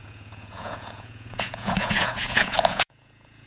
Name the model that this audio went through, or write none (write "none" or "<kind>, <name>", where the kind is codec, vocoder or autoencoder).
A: vocoder, Vocos